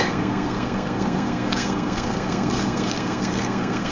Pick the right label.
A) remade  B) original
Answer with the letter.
A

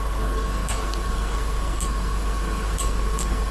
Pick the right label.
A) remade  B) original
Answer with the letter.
A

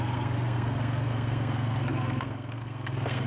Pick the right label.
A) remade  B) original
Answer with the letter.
A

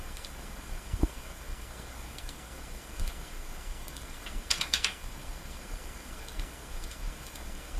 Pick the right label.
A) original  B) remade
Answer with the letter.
B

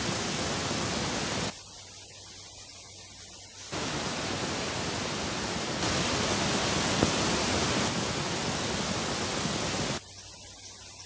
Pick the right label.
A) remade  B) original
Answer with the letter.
B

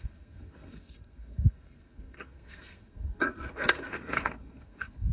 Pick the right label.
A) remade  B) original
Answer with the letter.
A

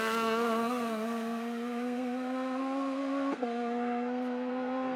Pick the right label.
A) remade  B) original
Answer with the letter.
A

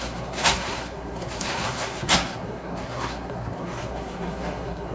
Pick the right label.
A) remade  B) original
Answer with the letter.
A